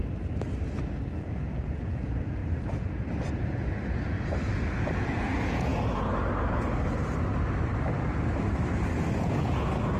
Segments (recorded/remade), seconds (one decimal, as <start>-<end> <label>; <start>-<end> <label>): 0.0-1.1 recorded; 1.1-2.4 remade; 2.4-3.3 recorded; 3.3-5.7 remade; 5.7-9.2 recorded; 9.2-10.0 remade